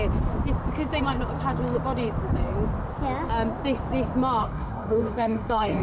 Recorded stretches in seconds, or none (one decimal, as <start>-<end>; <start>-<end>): 0.0-4.4